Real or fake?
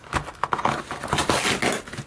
real